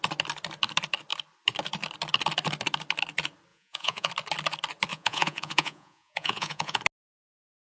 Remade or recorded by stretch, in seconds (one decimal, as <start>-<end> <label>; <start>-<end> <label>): 0.0-3.5 recorded; 3.5-4.1 remade; 4.1-4.9 recorded; 4.9-6.8 remade; 6.8-7.6 recorded

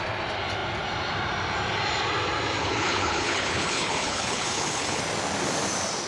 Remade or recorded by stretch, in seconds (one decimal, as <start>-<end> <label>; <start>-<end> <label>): 0.0-2.6 recorded; 2.6-5.0 remade; 5.0-6.1 recorded

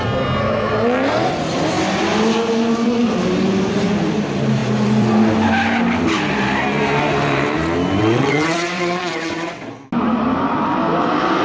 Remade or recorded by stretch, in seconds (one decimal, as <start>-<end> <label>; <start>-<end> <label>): 0.0-8.0 recorded; 8.0-9.7 remade; 9.7-11.4 recorded

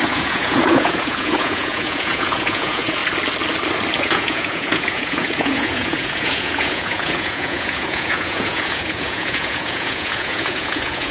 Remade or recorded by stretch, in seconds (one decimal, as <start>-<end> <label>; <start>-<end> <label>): 0.0-3.0 remade; 3.0-4.0 recorded; 4.0-11.1 remade

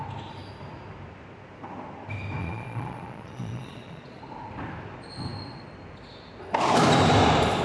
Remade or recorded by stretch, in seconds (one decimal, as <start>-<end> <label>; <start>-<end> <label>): 0.0-2.4 recorded; 2.4-4.2 remade; 4.2-7.6 recorded

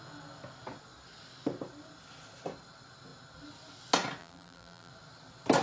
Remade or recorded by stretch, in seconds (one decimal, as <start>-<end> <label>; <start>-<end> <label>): 0.0-4.2 recorded; 4.2-4.9 remade; 4.9-5.6 recorded